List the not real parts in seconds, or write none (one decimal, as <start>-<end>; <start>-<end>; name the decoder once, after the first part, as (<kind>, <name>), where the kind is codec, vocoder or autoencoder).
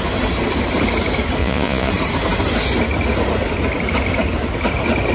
1.4-1.9 (vocoder, Vocos)